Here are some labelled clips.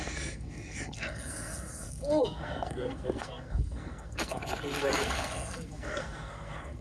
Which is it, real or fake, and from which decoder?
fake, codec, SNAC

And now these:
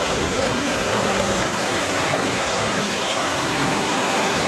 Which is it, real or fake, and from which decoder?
fake, codec, SNAC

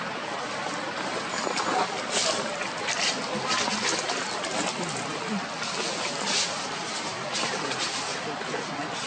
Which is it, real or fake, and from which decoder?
real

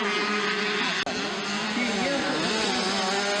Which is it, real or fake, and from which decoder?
real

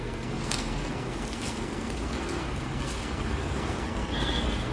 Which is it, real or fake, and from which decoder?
fake, codec, SNAC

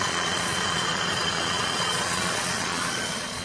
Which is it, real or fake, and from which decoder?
fake, vocoder, Vocos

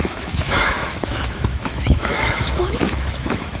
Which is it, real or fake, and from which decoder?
fake, autoencoder, DAC-VAE